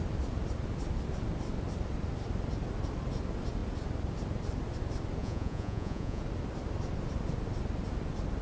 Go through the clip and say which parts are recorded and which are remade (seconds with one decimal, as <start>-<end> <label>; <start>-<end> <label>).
0.0-5.2 recorded; 5.2-6.2 remade; 6.2-8.4 recorded